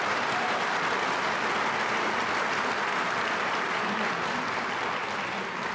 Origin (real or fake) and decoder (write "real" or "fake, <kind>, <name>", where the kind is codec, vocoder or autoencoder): real